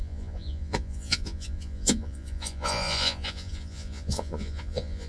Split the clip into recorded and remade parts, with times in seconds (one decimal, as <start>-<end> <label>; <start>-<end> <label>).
0.0-5.1 remade